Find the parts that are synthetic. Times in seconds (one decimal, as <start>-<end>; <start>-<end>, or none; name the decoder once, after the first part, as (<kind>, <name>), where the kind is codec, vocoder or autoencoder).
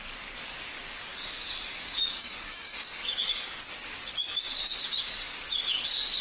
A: 0.0-6.2 (codec, DAC)